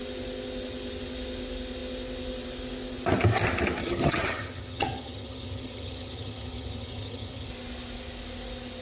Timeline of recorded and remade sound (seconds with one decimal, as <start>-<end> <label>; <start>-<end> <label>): 0.0-3.8 recorded; 3.8-7.5 remade; 7.5-8.8 recorded